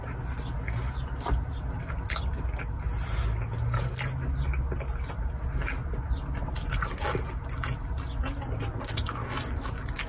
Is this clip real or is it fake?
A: real